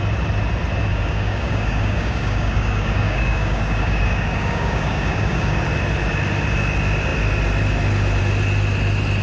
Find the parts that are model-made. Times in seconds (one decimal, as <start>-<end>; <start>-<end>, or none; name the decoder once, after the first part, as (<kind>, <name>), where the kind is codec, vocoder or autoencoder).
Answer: 0.9-5.6 (codec, DAC)